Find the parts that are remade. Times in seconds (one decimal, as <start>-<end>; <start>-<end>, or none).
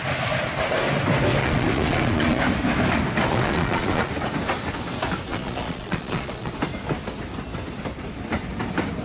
1.4-2.4; 3.3-4.1; 5.3-6.5